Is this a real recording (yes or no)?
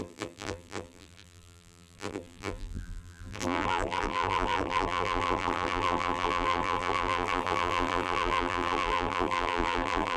no